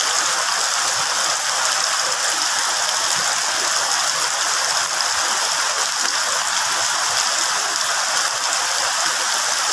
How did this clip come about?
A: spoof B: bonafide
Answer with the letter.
B